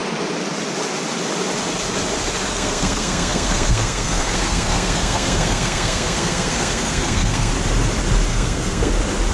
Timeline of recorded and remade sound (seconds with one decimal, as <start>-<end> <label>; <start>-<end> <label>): 0.0-2.5 recorded; 2.5-7.5 remade; 7.5-8.3 recorded; 8.3-8.9 remade; 8.9-9.3 recorded